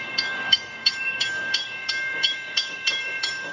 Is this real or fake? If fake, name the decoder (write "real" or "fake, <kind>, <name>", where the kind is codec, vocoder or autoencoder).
fake, codec, DAC